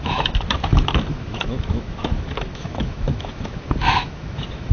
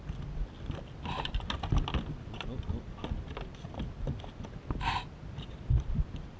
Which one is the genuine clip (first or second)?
second